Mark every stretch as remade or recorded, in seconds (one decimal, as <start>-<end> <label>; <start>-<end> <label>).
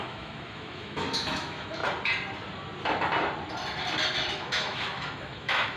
0.0-1.8 remade; 1.8-4.3 recorded; 4.3-5.8 remade